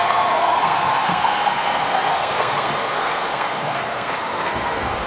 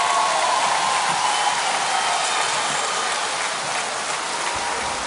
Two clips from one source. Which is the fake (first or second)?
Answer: first